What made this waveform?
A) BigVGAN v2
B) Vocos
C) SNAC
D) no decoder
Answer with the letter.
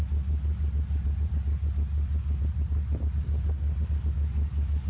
D